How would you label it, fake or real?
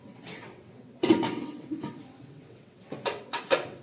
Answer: fake